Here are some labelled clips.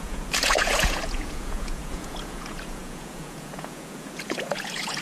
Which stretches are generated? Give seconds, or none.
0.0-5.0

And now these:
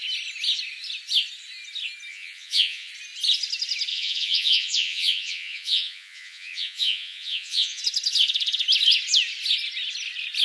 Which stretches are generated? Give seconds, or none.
2.1-2.9; 3.9-7.8

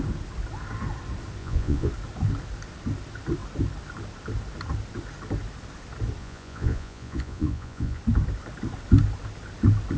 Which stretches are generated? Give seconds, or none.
1.4-1.9; 6.2-8.0

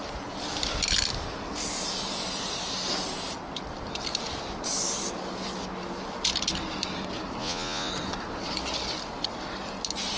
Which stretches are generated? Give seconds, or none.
7.4-7.9